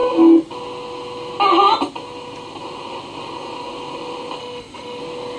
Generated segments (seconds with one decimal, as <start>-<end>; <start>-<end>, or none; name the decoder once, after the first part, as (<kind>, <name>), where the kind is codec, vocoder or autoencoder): 4.4-5.0 (autoencoder, DAC-VAE)